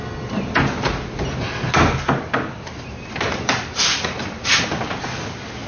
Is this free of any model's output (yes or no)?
yes